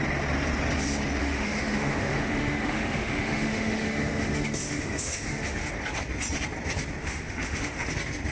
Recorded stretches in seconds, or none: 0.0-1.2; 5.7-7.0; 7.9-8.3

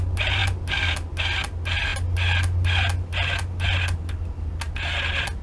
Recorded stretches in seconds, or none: 0.0-5.4

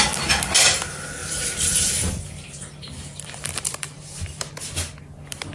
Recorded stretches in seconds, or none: 0.0-1.2; 4.5-5.5

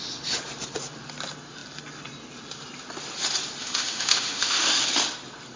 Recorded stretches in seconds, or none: 0.0-3.6; 4.8-5.6

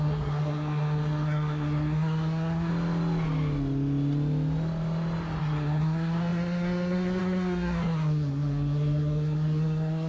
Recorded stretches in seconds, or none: 2.7-5.4

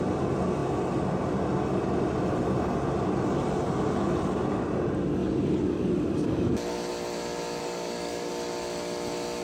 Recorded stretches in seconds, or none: 0.0-5.2; 6.9-7.6; 8.3-9.4

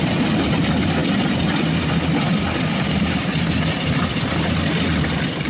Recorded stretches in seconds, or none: none